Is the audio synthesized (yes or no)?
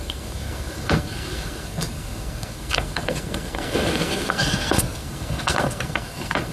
yes